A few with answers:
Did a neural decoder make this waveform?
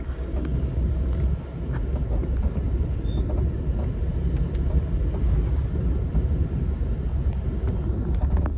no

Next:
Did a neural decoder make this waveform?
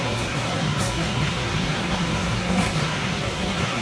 yes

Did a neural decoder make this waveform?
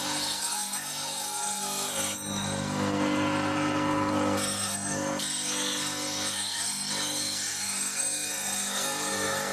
yes